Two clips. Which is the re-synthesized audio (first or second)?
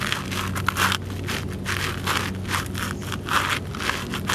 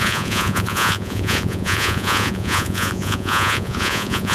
second